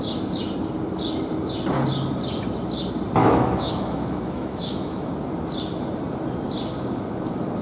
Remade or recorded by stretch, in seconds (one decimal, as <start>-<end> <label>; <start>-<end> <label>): 0.0-3.2 recorded; 3.2-5.1 remade; 5.1-7.6 recorded

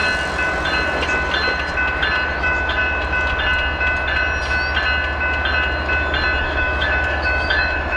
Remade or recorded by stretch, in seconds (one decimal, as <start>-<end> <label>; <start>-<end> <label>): 0.0-2.4 recorded; 2.4-2.8 remade; 2.8-6.4 recorded; 6.4-8.0 remade

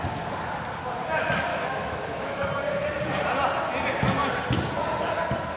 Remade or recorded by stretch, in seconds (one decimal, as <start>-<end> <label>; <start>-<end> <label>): 0.0-1.5 recorded; 1.5-2.5 remade; 2.5-5.6 recorded

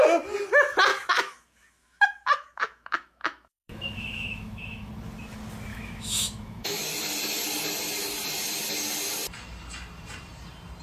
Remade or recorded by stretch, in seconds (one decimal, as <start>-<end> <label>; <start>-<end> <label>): 0.0-0.9 recorded; 0.9-4.9 remade; 4.9-5.7 recorded; 5.7-6.8 remade; 6.8-10.8 recorded

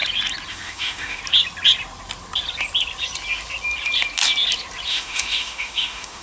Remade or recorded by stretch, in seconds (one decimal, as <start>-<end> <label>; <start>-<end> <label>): 0.0-0.5 recorded; 0.5-1.2 remade; 1.2-4.9 recorded; 4.9-6.2 remade

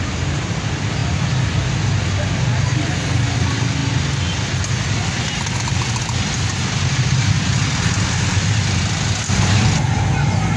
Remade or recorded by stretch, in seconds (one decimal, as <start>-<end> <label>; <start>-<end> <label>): 0.0-10.6 recorded

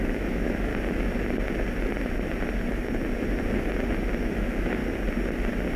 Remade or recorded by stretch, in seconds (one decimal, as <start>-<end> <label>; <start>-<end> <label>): 0.0-0.7 remade; 0.7-4.2 recorded; 4.2-4.8 remade; 4.8-5.8 recorded